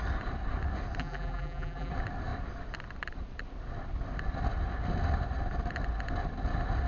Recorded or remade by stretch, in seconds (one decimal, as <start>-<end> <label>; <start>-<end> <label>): 0.0-1.0 recorded; 1.0-1.9 remade; 1.9-6.9 recorded

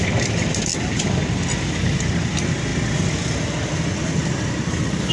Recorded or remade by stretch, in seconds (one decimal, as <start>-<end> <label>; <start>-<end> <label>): 0.0-0.7 recorded; 0.7-1.6 remade; 1.6-5.1 recorded